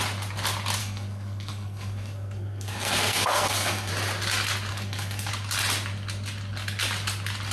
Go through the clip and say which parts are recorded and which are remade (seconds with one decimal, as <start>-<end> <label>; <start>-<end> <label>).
0.0-0.8 recorded; 0.8-3.9 remade; 3.9-4.7 recorded; 4.7-5.3 remade; 5.3-7.5 recorded